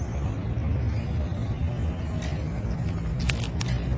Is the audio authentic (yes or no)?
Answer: yes